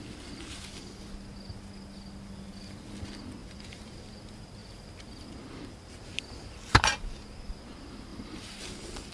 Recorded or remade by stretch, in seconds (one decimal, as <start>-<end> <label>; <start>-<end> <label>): 0.0-3.4 recorded; 3.4-4.1 remade; 4.1-8.1 recorded; 8.1-8.6 remade; 8.6-9.1 recorded